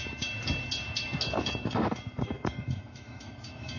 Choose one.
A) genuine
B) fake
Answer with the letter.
B